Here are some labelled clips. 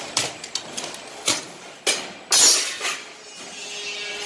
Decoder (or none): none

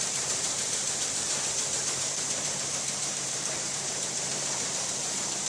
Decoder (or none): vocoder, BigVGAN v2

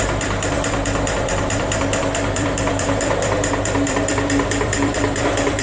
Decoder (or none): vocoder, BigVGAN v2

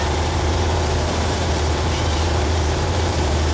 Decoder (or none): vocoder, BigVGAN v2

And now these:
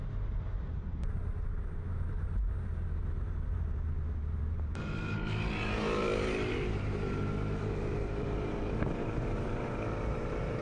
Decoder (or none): vocoder, BigVGAN v2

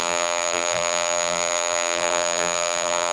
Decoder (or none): vocoder, BigVGAN v2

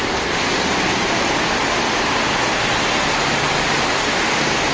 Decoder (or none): none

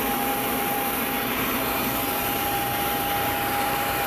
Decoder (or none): vocoder, BigVGAN v2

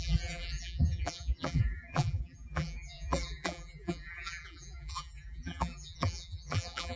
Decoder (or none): vocoder, BigVGAN v2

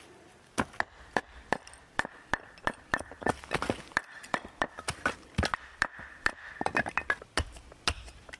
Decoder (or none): none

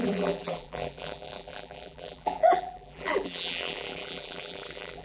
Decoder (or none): vocoder, BigVGAN v2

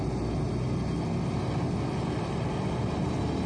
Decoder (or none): none